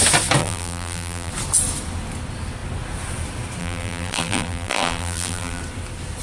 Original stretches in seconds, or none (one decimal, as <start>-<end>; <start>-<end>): 0.0-0.4; 1.3-3.6; 5.6-6.2